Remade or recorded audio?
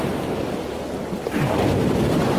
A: recorded